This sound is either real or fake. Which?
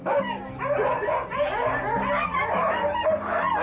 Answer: real